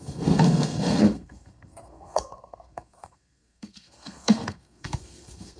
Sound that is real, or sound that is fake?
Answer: fake